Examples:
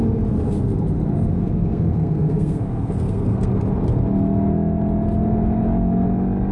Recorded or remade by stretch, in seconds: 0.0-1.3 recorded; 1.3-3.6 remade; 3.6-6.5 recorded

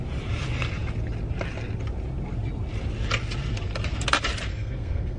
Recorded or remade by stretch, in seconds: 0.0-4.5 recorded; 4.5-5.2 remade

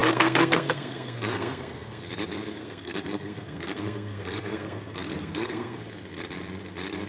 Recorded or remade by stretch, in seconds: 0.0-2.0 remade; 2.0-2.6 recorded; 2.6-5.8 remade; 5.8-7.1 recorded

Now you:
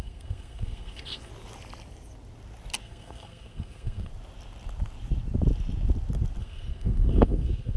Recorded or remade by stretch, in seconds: 0.0-1.3 remade; 1.3-2.8 recorded; 2.8-4.1 remade; 4.1-6.4 recorded; 6.4-7.8 remade

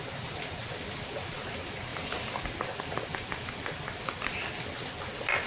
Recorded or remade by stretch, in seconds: 0.0-5.5 recorded

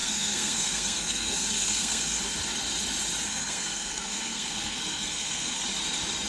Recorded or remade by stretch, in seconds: 0.0-2.2 remade; 2.2-3.3 recorded; 3.3-5.6 remade; 5.6-6.3 recorded

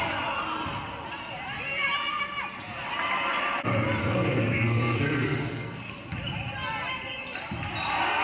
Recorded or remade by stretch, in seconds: 0.0-4.0 recorded; 4.0-5.9 remade; 5.9-8.2 recorded